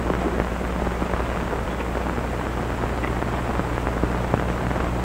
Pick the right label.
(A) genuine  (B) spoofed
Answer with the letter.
A